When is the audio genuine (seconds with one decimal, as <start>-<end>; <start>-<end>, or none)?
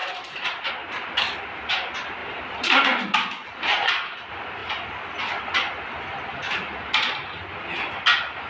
0.7-2.2; 2.8-8.5